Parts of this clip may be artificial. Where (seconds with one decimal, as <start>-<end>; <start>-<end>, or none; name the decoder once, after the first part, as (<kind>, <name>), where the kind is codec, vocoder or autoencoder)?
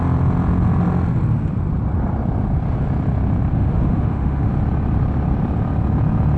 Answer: 3.5-4.5 (autoencoder, DAC-VAE)